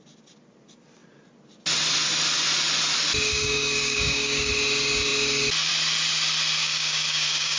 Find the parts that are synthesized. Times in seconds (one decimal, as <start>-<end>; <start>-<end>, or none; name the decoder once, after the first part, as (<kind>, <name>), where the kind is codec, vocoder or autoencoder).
3.3-4.5 (codec, DAC); 6.6-7.6